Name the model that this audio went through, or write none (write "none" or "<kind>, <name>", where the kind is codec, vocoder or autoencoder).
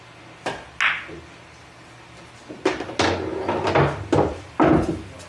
none